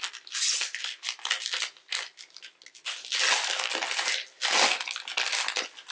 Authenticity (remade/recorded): recorded